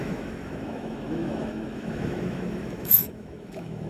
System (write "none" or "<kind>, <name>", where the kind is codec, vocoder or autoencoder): autoencoder, DAC-VAE